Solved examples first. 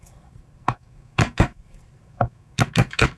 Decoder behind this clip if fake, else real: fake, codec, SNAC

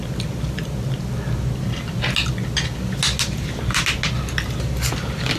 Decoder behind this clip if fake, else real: real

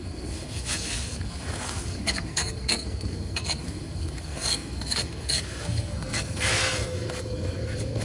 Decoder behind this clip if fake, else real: fake, codec, SNAC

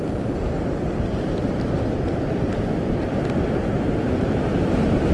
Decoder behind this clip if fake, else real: real